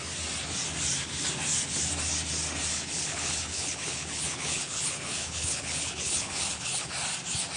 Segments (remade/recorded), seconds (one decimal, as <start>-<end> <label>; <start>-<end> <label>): 0.0-2.7 recorded; 2.7-6.9 remade; 6.9-7.6 recorded